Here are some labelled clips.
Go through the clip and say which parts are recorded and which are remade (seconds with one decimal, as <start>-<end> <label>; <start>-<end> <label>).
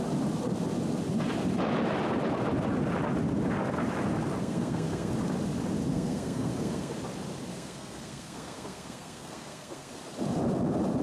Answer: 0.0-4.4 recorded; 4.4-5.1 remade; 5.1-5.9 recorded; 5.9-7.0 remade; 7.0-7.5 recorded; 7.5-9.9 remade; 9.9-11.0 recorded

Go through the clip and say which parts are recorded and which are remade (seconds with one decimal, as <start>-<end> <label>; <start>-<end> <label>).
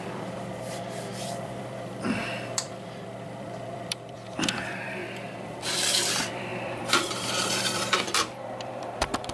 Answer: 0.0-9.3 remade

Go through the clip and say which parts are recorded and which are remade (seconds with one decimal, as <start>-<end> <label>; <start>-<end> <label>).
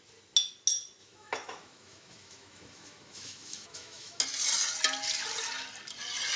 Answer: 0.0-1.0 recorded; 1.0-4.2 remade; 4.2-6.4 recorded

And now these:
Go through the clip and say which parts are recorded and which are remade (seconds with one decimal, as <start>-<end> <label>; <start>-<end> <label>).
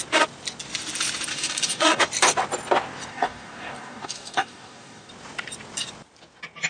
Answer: 0.0-1.3 recorded; 1.3-2.0 remade; 2.0-3.1 recorded; 3.1-5.1 remade; 5.1-6.7 recorded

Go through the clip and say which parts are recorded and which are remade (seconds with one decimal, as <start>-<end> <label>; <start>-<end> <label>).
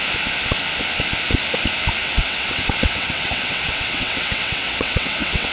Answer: 0.0-2.0 recorded; 2.0-5.5 remade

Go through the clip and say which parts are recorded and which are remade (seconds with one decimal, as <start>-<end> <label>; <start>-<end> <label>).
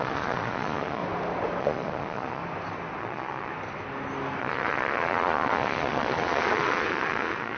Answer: 0.0-1.0 remade; 1.0-1.6 recorded; 1.6-2.4 remade; 2.4-3.0 recorded; 3.0-3.5 remade; 3.5-4.4 recorded; 4.4-7.6 remade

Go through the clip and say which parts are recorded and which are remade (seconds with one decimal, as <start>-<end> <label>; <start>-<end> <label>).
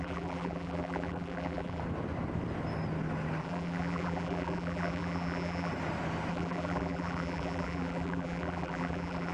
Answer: 0.0-1.8 remade; 1.8-3.4 recorded; 3.4-5.7 remade; 5.7-6.3 recorded; 6.3-9.3 remade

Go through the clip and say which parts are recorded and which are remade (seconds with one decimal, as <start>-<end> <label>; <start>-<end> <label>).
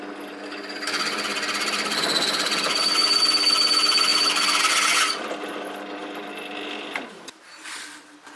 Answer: 0.0-6.0 recorded; 6.0-6.5 remade; 6.5-8.4 recorded